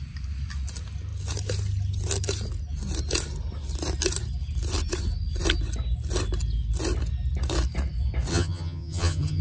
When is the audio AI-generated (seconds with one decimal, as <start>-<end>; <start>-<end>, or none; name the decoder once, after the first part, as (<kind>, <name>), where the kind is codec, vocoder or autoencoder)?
8.3-9.4 (vocoder, HiFi-GAN)